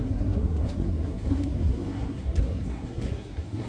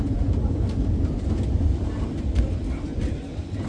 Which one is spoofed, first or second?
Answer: first